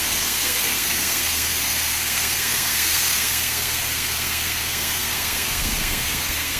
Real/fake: fake